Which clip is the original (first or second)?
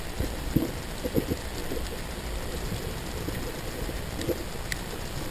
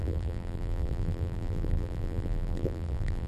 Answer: first